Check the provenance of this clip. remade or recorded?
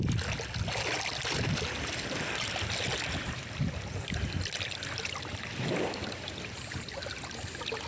recorded